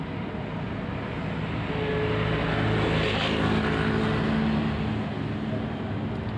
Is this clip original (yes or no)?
yes